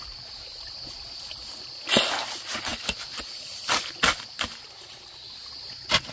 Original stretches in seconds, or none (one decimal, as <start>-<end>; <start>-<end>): 0.0-6.1